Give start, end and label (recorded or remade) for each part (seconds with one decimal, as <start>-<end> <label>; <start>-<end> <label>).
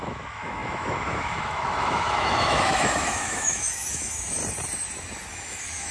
0.0-4.4 remade; 4.4-5.3 recorded; 5.3-5.9 remade